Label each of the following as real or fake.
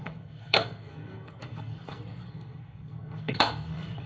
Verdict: fake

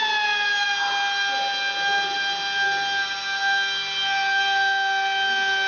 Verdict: real